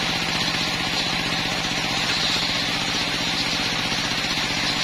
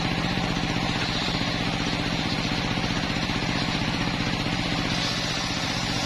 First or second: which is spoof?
second